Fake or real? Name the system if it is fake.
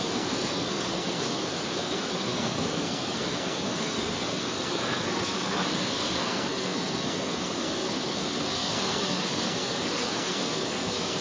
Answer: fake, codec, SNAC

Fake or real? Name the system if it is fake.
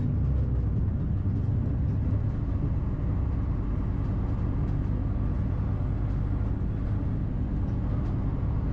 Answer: real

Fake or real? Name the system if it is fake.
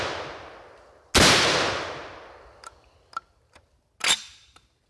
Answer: real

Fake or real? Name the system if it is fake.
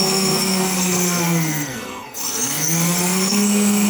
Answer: fake, codec, SNAC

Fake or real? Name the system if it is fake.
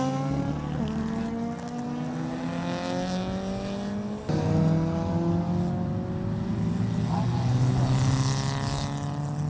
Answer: real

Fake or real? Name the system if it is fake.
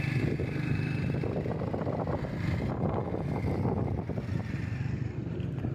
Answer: real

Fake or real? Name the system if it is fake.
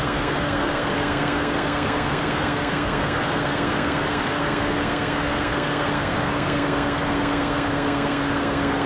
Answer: fake, codec, SNAC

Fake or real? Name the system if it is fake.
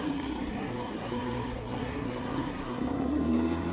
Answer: fake, codec, SNAC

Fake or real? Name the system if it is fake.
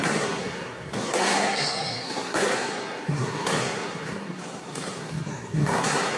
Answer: fake, codec, SNAC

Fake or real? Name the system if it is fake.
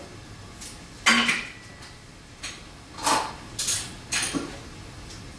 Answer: real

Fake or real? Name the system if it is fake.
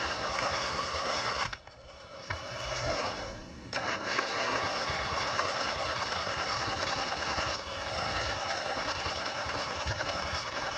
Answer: fake, codec, SNAC